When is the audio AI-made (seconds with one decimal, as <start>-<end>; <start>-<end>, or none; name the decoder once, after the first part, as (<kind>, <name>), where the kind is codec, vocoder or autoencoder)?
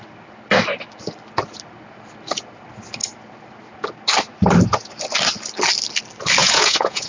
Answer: 6.4-7.1 (vocoder, Vocos)